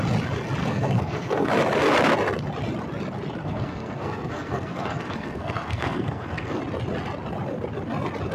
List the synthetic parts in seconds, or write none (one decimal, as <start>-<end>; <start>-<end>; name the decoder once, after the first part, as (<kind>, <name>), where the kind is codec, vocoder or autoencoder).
0.6-1.5 (codec, SNAC); 3.4-6.6